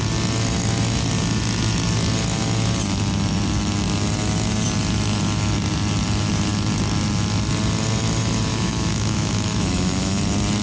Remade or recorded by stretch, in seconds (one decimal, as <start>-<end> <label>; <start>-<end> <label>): 0.0-8.5 recorded; 8.5-10.2 remade; 10.2-10.6 recorded